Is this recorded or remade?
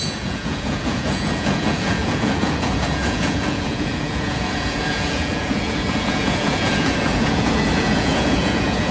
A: remade